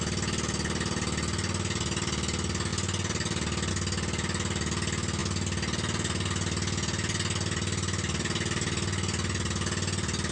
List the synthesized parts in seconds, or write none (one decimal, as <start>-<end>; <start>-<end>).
none